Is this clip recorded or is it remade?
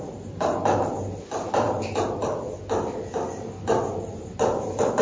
recorded